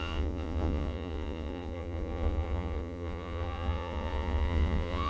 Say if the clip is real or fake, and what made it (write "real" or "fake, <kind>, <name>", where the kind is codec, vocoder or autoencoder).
fake, vocoder, Vocos